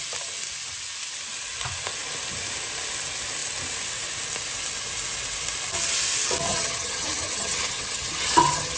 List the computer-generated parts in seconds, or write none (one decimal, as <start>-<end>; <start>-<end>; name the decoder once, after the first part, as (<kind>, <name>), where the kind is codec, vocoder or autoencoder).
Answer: 6.5-8.8 (vocoder, HiFi-GAN)